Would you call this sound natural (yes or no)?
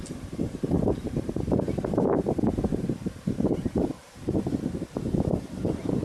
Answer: no